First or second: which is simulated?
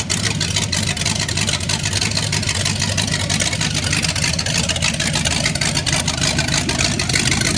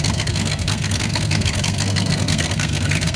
second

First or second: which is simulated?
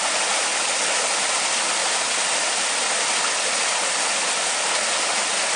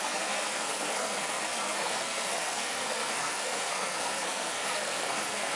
second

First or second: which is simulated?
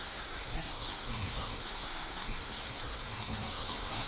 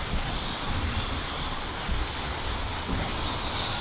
first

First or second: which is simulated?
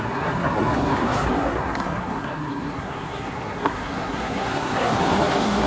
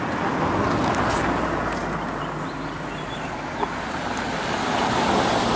first